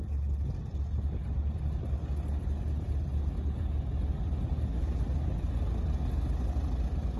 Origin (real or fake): real